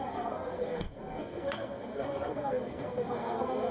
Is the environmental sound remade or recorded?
remade